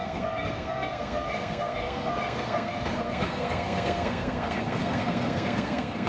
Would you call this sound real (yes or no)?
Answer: no